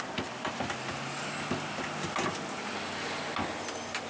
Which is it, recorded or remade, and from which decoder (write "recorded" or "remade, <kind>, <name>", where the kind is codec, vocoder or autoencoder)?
recorded